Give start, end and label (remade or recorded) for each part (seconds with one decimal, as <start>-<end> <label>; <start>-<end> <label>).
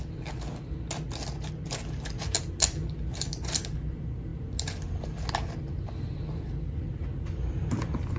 0.0-8.2 recorded